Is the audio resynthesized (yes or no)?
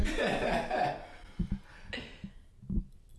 no